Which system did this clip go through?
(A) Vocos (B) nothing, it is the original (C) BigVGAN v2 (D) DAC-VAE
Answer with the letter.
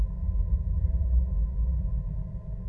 B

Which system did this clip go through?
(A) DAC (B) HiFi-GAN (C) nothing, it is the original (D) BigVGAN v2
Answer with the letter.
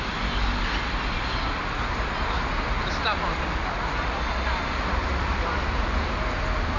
C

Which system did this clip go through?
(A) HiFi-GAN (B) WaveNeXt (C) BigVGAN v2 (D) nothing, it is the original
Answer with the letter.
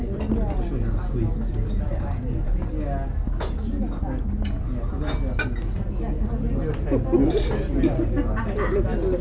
D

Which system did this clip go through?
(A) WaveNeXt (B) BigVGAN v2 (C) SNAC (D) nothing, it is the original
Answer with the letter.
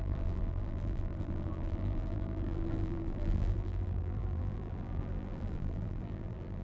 B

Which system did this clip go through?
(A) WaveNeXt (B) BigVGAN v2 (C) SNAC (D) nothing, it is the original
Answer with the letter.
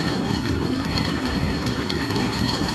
C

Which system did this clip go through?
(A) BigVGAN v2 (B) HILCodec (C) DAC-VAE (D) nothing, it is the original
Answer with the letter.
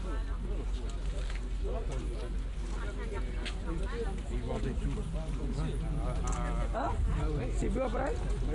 D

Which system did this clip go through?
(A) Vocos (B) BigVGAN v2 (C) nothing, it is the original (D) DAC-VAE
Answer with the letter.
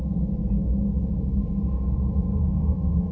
C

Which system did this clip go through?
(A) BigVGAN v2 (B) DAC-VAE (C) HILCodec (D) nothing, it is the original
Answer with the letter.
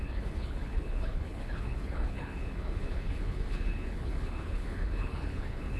C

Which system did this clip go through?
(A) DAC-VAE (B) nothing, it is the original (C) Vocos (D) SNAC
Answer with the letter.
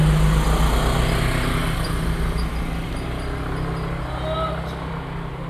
B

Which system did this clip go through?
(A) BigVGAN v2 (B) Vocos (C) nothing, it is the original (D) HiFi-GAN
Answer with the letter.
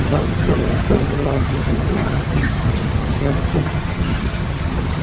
D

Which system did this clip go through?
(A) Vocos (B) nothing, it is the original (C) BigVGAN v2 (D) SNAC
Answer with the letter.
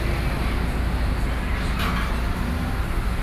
B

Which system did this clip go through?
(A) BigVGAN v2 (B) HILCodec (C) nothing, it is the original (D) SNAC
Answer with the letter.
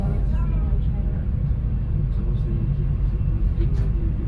A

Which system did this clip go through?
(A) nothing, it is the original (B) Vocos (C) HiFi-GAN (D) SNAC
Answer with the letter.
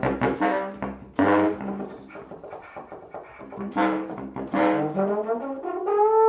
A